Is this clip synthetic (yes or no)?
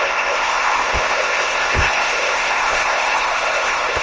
yes